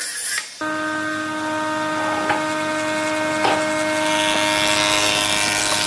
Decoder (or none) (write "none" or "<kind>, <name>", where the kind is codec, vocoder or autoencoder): none